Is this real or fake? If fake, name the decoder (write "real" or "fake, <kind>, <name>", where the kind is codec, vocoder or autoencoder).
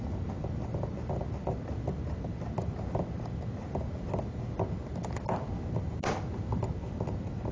real